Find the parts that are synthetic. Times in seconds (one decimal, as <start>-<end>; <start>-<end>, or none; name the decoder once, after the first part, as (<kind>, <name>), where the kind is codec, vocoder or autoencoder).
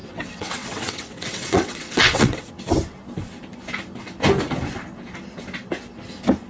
0.0-2.5 (vocoder, WaveNeXt)